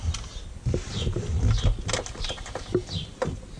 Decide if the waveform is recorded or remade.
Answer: recorded